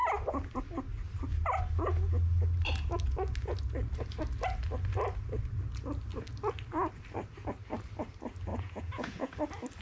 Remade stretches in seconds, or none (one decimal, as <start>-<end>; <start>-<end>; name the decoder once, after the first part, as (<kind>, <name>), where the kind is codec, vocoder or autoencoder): 8.5-9.3 (vocoder, Vocos)